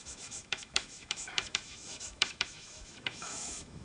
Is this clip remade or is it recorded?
remade